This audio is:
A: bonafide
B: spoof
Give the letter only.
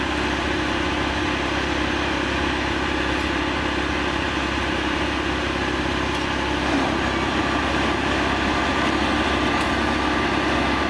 A